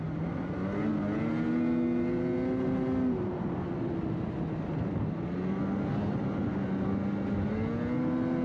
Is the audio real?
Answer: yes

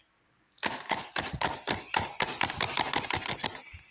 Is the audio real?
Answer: yes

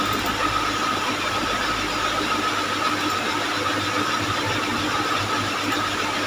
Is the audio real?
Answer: yes